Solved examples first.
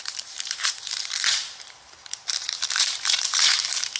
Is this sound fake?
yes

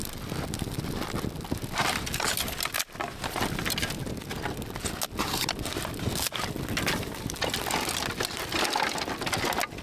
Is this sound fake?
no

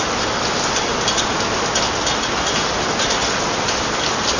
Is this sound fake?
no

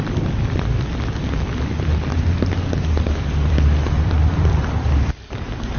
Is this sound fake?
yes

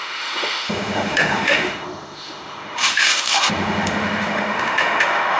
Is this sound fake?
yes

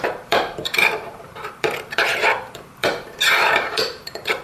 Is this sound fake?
yes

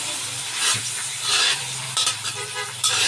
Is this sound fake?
yes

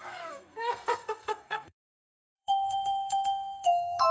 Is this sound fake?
yes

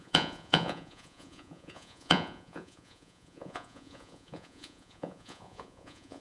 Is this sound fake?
yes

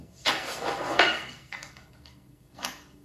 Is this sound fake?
yes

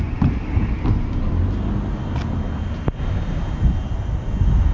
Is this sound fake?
no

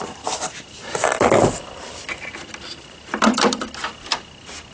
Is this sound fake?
no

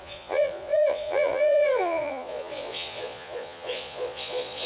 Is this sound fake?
yes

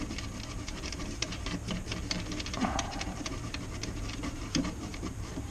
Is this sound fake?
yes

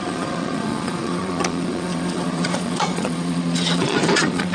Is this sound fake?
yes